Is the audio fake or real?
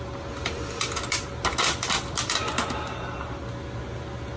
real